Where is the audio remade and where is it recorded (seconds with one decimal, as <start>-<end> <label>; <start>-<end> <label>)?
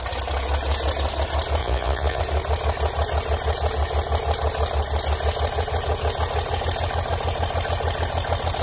0.0-1.6 recorded; 1.6-2.2 remade; 2.2-8.6 recorded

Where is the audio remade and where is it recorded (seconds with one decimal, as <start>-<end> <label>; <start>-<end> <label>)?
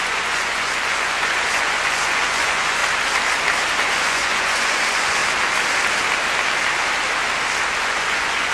0.0-2.8 remade; 2.8-3.9 recorded; 3.9-5.2 remade; 5.2-7.8 recorded; 7.8-8.5 remade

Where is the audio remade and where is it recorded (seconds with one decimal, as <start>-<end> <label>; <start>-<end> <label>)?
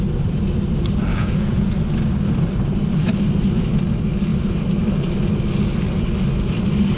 0.0-1.1 recorded; 1.1-1.7 remade; 1.7-7.0 recorded